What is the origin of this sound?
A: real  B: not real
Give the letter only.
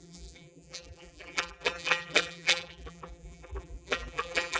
B